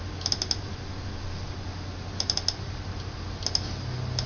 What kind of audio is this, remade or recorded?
recorded